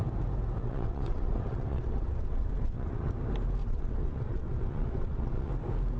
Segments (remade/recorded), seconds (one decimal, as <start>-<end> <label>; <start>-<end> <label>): 0.0-0.6 recorded; 0.6-3.1 remade; 3.1-3.6 recorded; 3.6-5.5 remade; 5.5-6.0 recorded